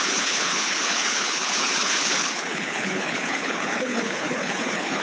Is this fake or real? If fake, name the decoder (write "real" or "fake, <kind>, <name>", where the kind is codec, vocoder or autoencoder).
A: fake, codec, HILCodec